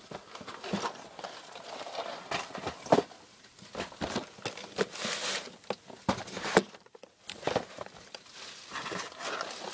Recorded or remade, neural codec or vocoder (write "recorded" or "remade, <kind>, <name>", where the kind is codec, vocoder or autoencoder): recorded